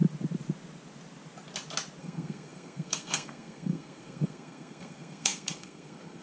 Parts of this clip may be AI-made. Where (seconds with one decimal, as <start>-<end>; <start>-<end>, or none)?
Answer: 2.0-6.2